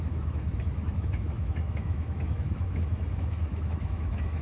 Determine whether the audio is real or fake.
fake